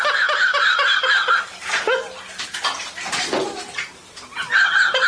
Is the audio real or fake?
real